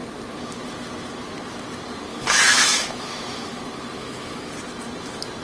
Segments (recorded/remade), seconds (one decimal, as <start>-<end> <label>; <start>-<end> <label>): 0.0-2.1 recorded; 2.1-3.6 remade; 3.6-4.0 recorded; 4.0-4.5 remade; 4.5-5.4 recorded